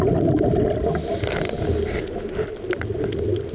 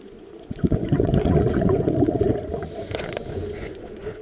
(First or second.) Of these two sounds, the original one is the first